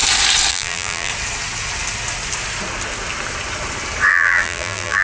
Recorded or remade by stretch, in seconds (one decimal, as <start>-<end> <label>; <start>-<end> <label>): 0.0-0.5 recorded; 0.5-1.1 remade; 1.1-4.1 recorded; 4.1-5.0 remade